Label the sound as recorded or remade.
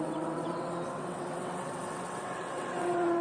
remade